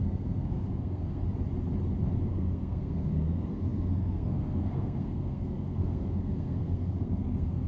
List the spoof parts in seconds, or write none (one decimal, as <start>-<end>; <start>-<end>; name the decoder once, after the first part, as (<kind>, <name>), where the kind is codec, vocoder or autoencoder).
0.0-1.2 (codec, SNAC); 2.2-7.7